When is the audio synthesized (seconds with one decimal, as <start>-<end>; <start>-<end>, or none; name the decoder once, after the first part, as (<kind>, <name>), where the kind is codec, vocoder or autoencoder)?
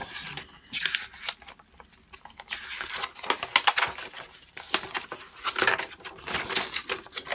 none